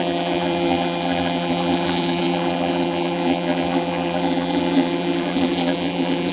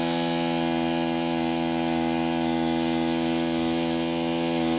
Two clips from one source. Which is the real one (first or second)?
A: second